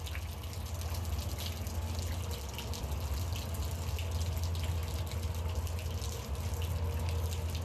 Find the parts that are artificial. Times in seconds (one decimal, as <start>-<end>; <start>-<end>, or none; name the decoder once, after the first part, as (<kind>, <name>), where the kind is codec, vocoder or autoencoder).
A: none